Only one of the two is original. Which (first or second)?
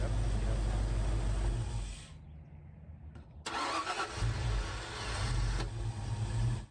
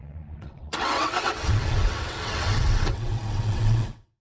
first